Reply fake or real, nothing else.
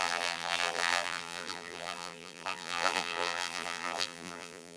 fake